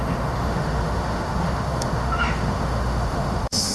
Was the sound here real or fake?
fake